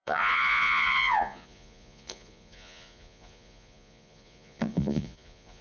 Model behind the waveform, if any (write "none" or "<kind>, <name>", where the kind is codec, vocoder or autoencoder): vocoder, Vocos